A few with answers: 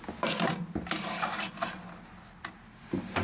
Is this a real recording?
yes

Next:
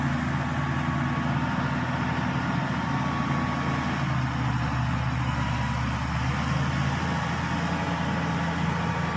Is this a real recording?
yes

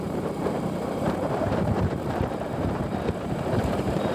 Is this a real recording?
no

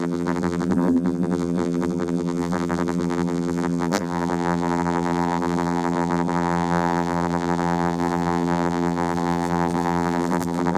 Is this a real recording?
no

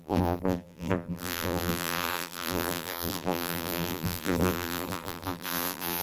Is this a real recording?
no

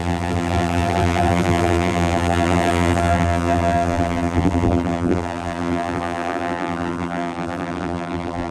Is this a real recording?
no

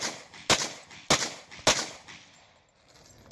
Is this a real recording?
yes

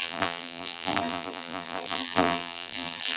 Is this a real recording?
no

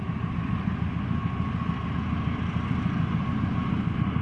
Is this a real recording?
yes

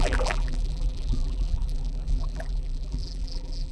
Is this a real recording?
no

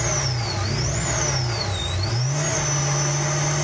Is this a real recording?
yes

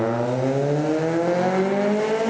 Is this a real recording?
yes